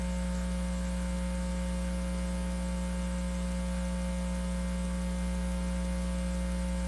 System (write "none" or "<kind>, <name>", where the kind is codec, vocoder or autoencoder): none